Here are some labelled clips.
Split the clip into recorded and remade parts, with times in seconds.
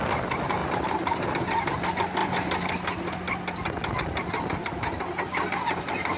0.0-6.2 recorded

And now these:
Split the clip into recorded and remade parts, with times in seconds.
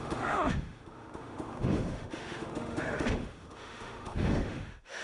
0.0-5.0 remade